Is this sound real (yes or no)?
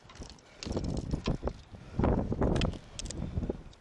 yes